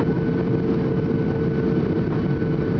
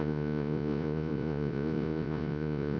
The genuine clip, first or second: first